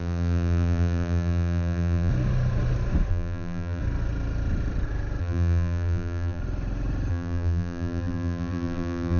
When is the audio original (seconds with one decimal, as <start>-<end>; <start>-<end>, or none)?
2.1-3.1; 3.8-5.2; 6.4-7.1